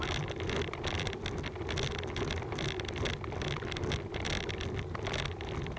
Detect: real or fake real